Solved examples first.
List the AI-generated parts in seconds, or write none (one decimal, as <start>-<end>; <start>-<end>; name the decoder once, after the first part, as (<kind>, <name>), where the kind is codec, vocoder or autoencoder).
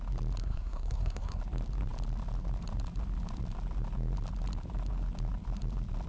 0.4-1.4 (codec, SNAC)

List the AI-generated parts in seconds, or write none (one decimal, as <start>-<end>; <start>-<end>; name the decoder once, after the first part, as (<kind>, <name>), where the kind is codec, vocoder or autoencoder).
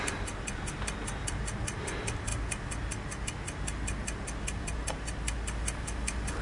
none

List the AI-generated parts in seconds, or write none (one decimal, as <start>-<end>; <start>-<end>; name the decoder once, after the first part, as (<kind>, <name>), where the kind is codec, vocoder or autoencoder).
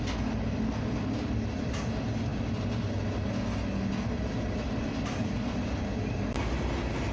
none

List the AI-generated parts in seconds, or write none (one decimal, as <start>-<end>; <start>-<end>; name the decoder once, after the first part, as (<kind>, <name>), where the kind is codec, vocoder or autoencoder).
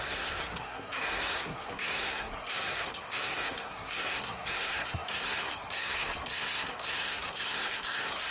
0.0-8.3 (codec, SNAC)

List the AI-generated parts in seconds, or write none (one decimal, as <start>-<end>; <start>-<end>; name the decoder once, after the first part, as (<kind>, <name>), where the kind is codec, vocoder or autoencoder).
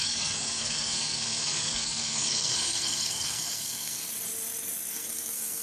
0.0-4.1 (codec, SNAC); 4.9-5.6